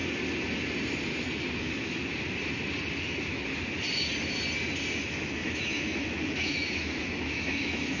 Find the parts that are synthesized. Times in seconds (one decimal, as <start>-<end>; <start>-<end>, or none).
1.6-2.0; 5.1-8.0